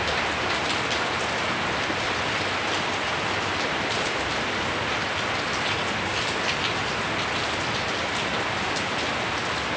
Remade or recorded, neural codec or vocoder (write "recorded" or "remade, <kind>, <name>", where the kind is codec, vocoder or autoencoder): recorded